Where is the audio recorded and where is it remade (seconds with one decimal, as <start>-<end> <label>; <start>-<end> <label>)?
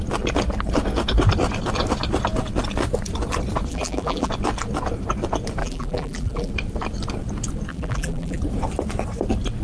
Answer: 0.0-3.7 recorded; 3.7-4.3 remade; 4.3-5.6 recorded; 5.6-6.5 remade; 6.5-7.7 recorded; 7.7-8.4 remade; 8.4-9.6 recorded